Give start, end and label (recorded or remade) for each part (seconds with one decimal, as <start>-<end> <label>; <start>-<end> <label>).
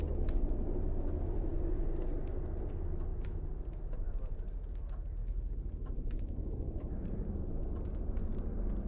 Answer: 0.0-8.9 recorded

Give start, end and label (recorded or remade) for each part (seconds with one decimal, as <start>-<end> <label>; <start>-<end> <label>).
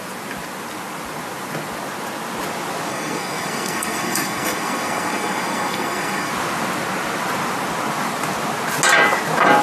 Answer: 0.0-2.9 recorded; 2.9-6.3 remade; 6.3-9.6 recorded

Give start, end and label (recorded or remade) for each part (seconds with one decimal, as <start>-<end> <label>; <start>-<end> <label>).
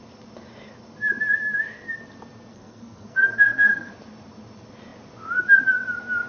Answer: 0.0-2.5 recorded; 2.5-3.9 remade; 3.9-6.3 recorded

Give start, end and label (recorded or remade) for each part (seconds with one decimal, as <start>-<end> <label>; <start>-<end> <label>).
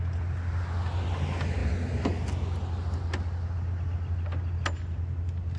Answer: 0.0-5.6 recorded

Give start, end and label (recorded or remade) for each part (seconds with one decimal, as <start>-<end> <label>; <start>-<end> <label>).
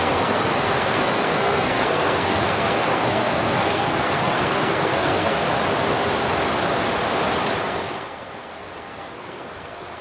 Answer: 0.0-5.4 remade; 5.4-7.6 recorded; 7.6-10.0 remade